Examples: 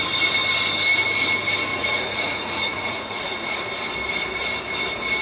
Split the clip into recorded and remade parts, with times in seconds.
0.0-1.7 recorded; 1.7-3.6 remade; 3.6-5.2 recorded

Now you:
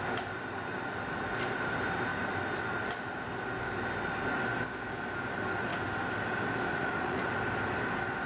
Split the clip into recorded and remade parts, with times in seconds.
0.0-6.7 recorded; 6.7-7.3 remade; 7.3-8.3 recorded